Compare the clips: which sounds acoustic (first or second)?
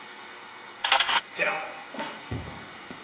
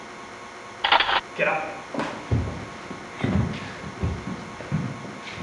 second